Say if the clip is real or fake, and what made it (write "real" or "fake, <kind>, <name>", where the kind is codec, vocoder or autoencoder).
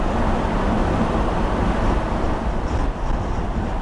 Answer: real